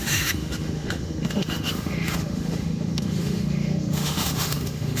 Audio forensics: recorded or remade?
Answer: remade